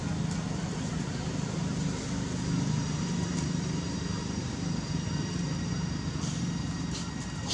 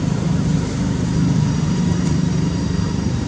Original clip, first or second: first